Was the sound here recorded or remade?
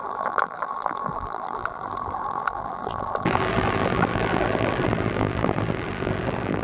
remade